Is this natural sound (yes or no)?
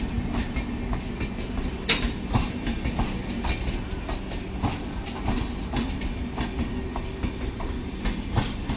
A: yes